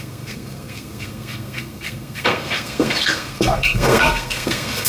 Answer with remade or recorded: remade